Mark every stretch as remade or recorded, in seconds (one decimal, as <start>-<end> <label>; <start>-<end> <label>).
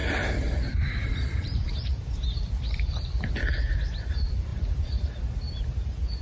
0.0-2.6 remade; 2.6-4.5 recorded; 4.5-5.2 remade; 5.2-6.2 recorded